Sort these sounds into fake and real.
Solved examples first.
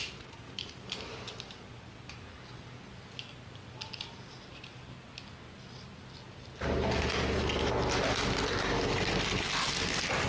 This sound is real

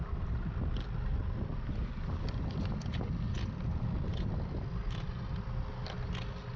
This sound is real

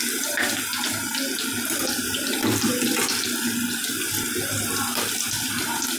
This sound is real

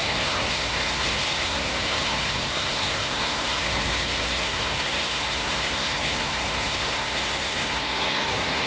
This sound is fake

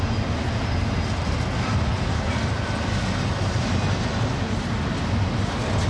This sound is real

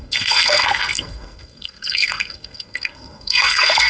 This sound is fake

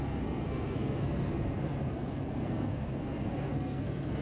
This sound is fake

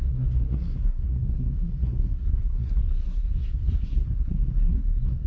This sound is fake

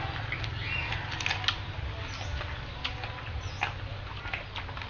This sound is real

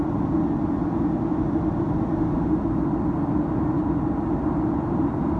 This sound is real